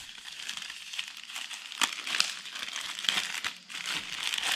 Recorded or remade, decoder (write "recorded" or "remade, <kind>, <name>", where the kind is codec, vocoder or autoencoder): recorded